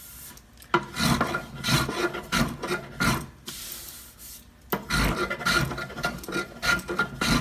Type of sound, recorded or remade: recorded